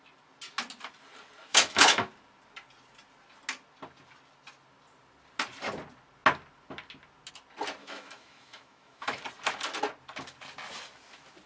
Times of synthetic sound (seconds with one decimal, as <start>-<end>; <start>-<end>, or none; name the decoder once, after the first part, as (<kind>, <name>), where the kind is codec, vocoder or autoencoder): 1.5-2.1 (autoencoder, DAC-VAE); 7.8-9.2